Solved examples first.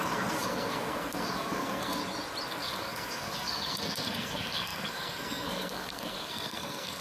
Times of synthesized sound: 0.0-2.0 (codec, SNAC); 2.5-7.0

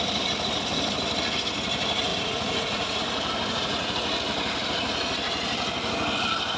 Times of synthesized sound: 2.1-3.0 (vocoder, Vocos); 3.5-4.1

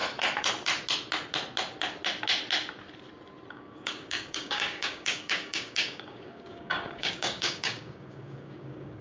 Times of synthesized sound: 3.5-9.0 (codec, DAC)

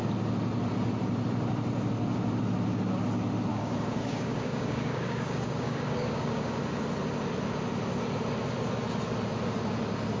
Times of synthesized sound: 3.5-6.8 (codec, DAC)

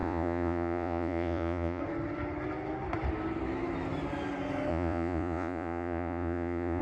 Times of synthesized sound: 0.0-1.8 (vocoder, Vocos); 4.7-6.8

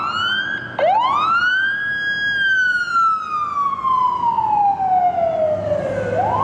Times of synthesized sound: none